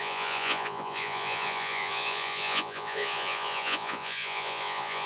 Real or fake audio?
fake